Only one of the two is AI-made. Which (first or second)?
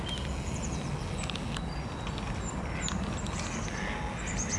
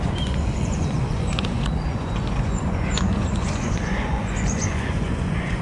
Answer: second